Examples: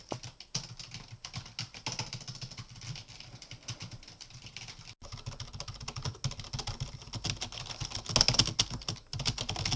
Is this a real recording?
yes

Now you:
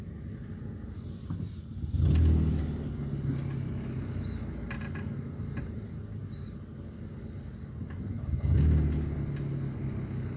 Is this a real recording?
yes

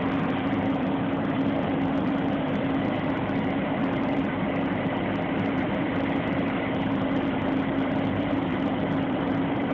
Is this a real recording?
no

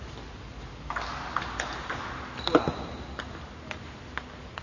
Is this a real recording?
yes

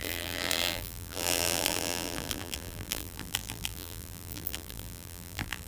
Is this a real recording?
no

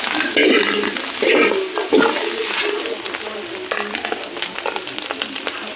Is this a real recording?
yes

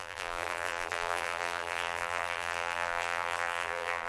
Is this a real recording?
no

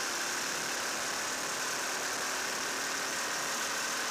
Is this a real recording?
yes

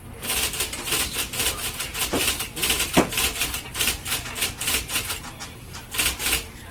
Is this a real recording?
no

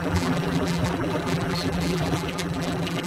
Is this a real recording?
no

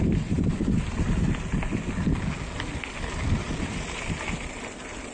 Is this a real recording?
yes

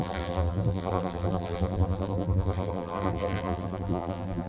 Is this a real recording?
no